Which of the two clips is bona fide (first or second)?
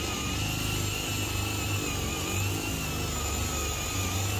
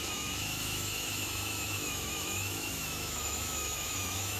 first